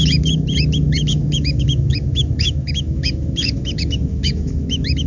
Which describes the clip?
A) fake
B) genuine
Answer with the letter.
A